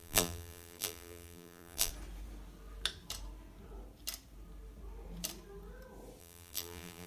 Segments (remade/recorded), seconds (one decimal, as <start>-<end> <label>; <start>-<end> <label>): 0.0-1.9 remade; 1.9-6.2 recorded; 6.2-7.1 remade